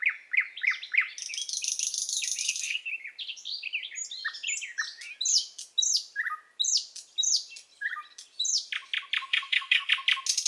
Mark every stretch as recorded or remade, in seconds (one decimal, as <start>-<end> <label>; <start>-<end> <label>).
0.0-2.4 recorded; 2.4-2.9 remade; 2.9-9.3 recorded; 9.3-9.9 remade; 9.9-10.5 recorded

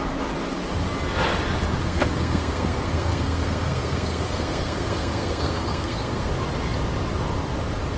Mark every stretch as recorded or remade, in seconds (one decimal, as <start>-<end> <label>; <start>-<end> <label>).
0.0-1.8 recorded; 1.8-6.3 remade; 6.3-8.0 recorded

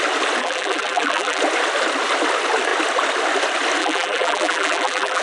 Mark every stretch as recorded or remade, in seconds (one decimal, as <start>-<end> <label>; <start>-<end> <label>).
0.0-0.4 recorded; 0.4-1.4 remade; 1.4-3.8 recorded; 3.8-5.2 remade